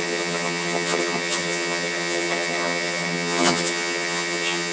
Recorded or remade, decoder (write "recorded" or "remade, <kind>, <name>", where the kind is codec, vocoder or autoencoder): remade, vocoder, HiFi-GAN